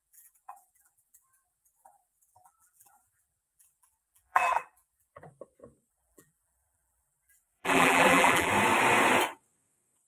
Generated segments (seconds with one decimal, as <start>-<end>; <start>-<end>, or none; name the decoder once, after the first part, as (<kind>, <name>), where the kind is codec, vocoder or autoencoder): 0.0-5.3 (vocoder, BigVGAN v2); 5.9-8.5